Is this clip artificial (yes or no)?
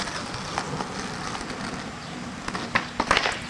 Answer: no